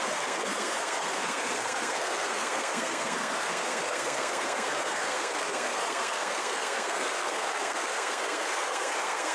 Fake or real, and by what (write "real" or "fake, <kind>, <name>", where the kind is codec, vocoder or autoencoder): fake, codec, SNAC